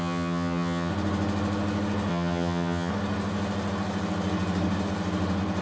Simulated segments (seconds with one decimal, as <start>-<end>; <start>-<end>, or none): 0.0-0.9; 2.1-2.9